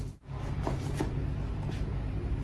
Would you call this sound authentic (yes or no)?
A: yes